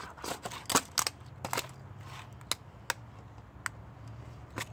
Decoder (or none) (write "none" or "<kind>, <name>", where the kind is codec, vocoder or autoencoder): none